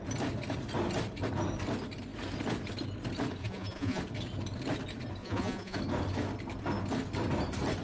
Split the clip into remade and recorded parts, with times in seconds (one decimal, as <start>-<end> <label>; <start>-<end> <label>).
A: 0.0-3.4 recorded; 3.4-4.0 remade; 4.0-5.2 recorded; 5.2-5.8 remade; 5.8-7.8 recorded